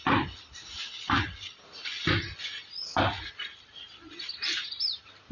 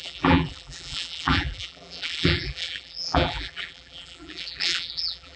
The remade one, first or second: second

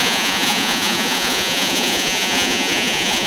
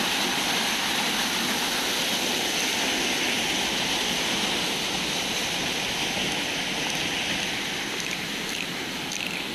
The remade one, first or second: first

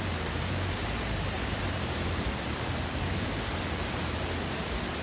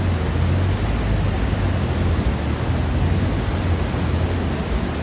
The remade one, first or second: first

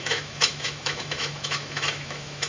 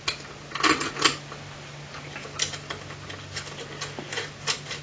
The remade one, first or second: first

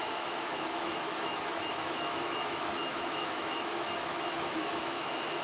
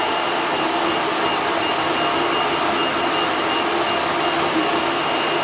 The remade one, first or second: first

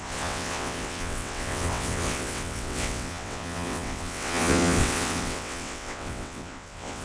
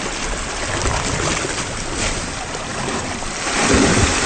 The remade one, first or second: first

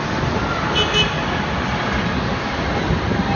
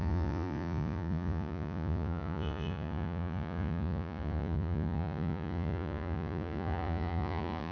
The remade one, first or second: second